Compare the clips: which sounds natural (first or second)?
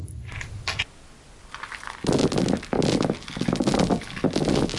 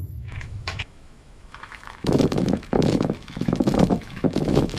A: first